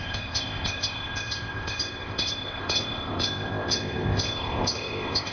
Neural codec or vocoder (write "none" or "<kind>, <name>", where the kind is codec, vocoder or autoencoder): codec, ZipCodec